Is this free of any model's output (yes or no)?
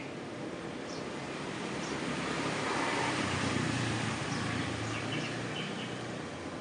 no